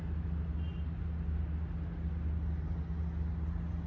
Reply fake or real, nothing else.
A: real